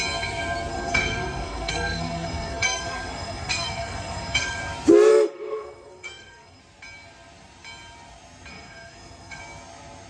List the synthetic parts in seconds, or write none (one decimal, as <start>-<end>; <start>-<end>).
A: 0.7-4.6; 5.1-6.6; 8.5-9.4